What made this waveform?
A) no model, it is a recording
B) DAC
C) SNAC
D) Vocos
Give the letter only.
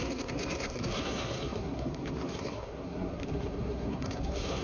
C